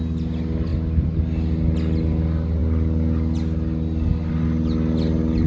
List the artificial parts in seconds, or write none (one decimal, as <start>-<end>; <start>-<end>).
none